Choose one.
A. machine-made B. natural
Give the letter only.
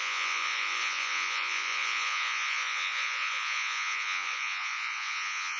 A